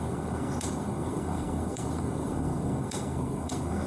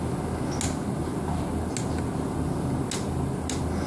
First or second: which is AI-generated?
first